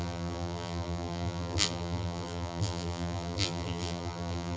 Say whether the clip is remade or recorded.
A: remade